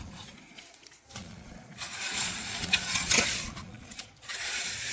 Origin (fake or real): fake